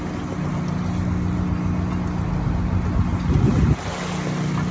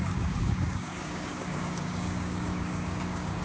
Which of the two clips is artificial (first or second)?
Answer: second